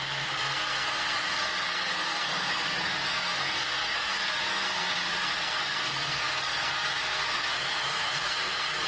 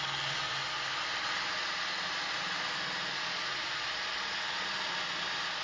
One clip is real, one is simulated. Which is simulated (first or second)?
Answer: first